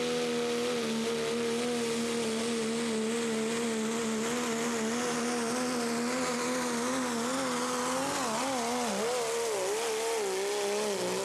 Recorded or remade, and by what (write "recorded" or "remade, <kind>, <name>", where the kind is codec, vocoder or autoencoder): recorded